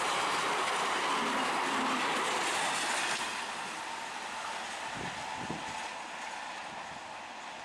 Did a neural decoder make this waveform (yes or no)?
no